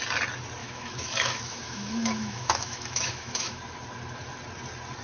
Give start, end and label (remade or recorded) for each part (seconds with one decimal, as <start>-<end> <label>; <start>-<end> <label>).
0.0-0.6 recorded; 0.6-3.6 remade; 3.6-5.0 recorded